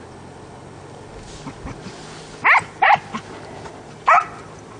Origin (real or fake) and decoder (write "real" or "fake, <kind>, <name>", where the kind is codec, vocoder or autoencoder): real